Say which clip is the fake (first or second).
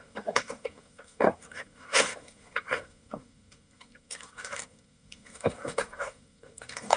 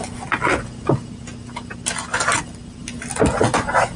first